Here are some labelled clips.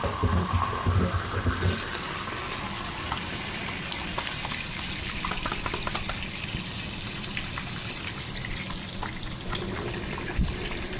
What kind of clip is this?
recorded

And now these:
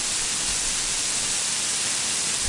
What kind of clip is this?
recorded